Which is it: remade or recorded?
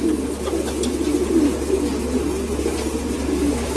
recorded